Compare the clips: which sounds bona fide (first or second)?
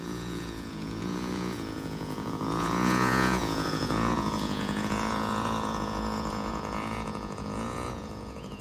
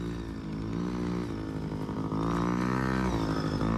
second